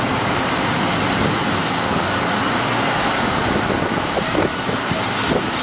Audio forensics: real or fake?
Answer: real